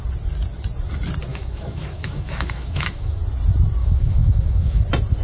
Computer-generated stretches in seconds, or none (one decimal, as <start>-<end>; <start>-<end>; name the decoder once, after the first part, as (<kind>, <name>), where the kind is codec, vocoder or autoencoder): 1.3-3.2 (autoencoder, DAC-VAE); 3.8-4.8